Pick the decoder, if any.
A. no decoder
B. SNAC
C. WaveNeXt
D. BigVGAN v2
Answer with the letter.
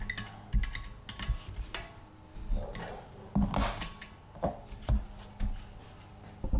A